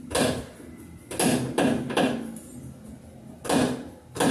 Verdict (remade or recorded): recorded